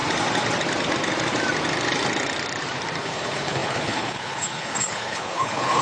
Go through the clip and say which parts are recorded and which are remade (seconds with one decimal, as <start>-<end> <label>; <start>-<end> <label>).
0.0-3.0 recorded; 3.0-5.8 remade